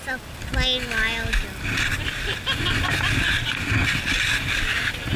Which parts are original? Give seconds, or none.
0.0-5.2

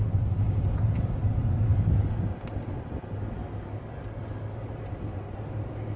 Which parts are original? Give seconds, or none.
0.0-1.7; 2.2-3.4; 4.6-6.0

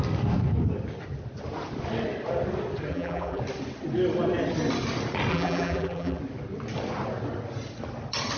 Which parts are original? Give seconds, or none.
0.0-2.9; 3.4-5.3; 6.2-8.4

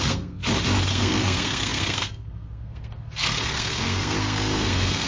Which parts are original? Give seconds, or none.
0.4-0.9